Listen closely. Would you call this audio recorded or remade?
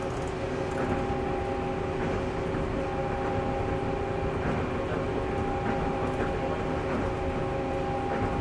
recorded